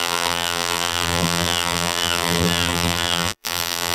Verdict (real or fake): fake